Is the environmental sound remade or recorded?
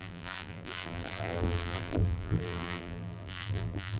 remade